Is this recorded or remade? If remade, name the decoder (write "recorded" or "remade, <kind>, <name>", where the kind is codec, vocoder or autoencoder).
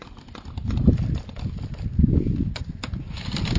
recorded